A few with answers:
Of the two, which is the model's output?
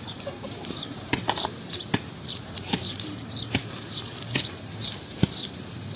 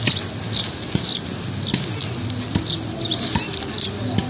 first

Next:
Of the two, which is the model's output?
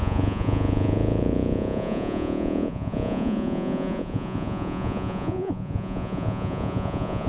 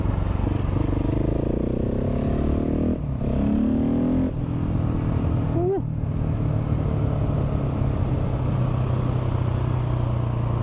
first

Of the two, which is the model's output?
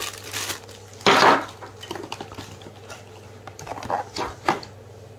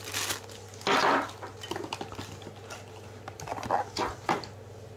first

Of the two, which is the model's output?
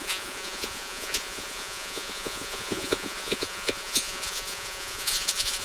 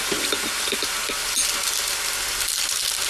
first